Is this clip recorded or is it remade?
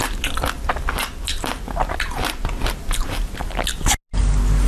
recorded